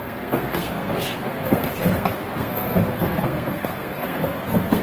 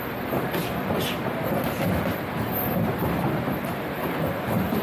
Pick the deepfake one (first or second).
first